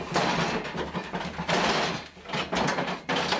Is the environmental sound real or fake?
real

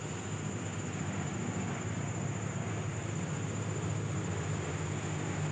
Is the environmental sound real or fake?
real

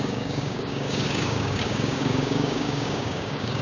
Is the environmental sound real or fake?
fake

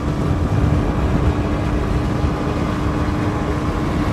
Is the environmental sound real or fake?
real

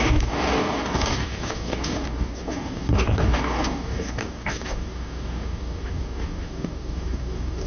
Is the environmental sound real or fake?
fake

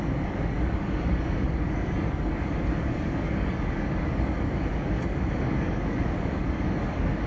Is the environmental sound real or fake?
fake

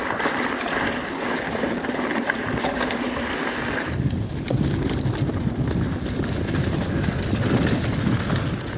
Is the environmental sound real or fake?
real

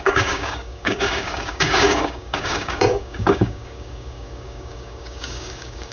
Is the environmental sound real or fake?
fake